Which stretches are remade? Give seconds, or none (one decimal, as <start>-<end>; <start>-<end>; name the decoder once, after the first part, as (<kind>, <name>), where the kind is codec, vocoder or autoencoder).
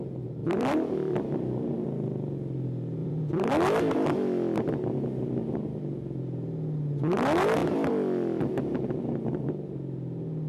0.4-2.3 (vocoder, BigVGAN v2); 3.0-3.5; 7.6-8.4